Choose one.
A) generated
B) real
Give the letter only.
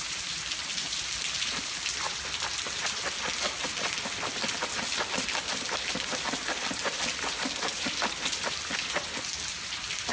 B